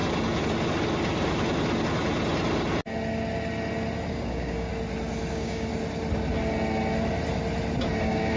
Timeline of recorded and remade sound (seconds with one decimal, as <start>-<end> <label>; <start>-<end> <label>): 0.0-4.1 recorded; 4.1-4.7 remade; 4.7-5.3 recorded; 5.3-5.7 remade; 5.7-8.0 recorded; 8.0-8.4 remade